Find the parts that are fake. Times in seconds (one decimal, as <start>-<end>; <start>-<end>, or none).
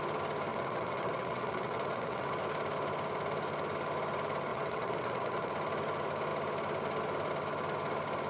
0.5-2.3; 4.5-5.5